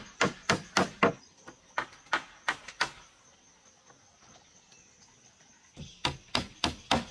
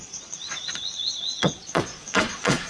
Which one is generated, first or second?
second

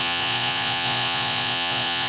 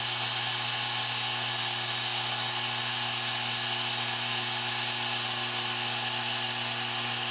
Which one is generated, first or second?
first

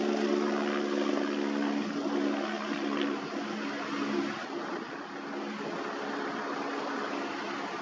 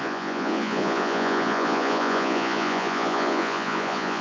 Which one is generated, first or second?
second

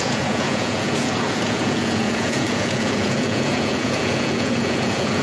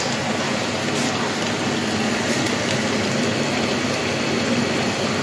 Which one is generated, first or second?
first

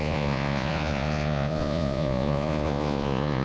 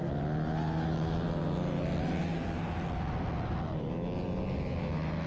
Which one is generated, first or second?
first